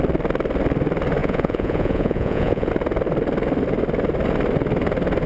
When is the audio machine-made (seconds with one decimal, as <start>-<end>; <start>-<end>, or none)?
1.2-2.7